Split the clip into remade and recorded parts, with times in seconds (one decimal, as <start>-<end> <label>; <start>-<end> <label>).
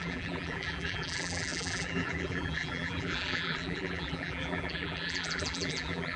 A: 0.0-6.2 remade